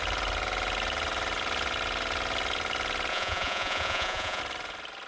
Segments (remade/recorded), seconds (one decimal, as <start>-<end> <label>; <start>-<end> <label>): 0.0-3.1 recorded; 3.1-4.4 remade; 4.4-5.1 recorded